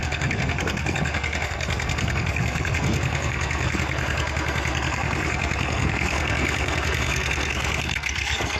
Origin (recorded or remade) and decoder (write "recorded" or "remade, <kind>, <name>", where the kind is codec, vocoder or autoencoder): remade, codec, SNAC